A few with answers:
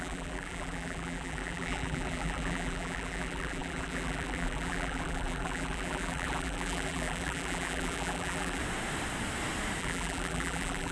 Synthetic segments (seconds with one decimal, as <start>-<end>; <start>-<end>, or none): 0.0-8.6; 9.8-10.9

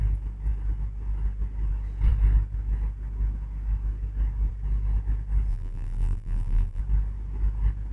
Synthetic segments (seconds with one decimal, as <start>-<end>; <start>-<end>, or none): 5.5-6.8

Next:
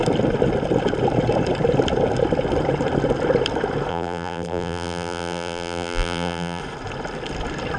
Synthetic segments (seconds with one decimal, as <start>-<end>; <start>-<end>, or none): 3.9-6.6